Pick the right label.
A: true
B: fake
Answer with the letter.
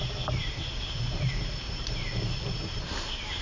B